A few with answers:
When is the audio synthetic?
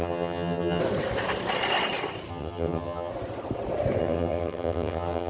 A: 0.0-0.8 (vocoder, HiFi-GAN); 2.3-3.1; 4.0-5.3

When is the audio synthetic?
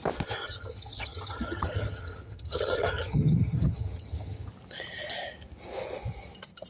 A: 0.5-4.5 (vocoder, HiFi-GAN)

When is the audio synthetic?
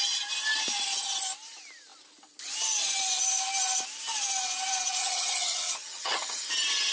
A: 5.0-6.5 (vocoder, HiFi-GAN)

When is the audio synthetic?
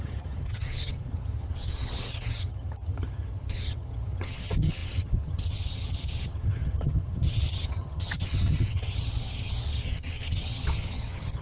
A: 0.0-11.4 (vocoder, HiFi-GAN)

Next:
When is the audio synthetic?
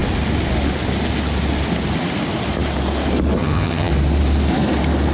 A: 3.4-3.9 (vocoder, HiFi-GAN)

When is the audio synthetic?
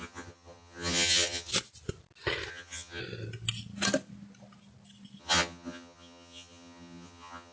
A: 0.0-1.5 (vocoder, HiFi-GAN); 2.5-3.0; 5.2-7.5